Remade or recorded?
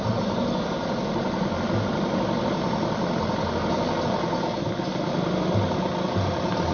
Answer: recorded